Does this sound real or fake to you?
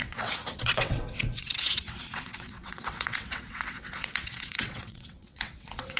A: fake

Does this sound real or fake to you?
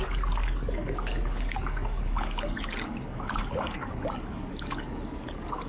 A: fake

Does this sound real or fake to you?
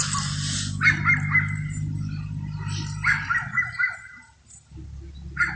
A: real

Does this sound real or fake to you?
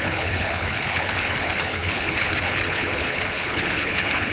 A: fake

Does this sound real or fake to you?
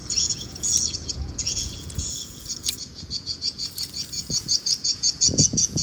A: fake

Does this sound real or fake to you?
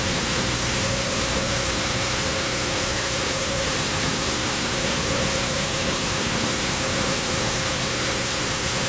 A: fake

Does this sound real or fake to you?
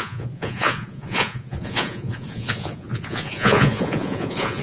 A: fake